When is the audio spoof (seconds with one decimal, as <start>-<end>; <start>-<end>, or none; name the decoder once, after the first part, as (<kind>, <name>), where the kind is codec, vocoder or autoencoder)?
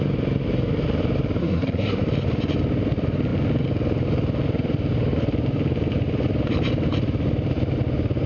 1.4-2.0 (codec, SNAC)